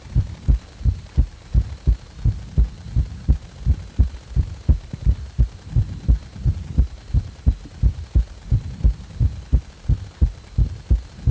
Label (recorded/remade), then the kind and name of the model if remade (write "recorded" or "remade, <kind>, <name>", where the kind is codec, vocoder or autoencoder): recorded